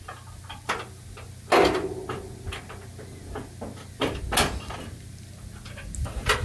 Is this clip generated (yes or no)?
no